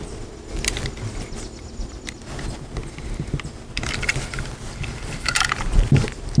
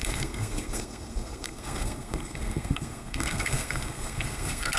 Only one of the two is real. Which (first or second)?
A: first